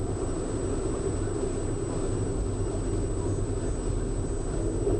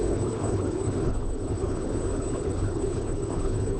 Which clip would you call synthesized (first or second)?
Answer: second